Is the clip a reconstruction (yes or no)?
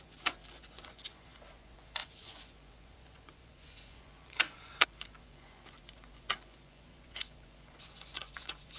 yes